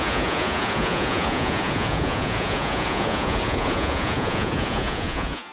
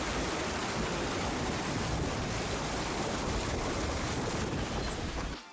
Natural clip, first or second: second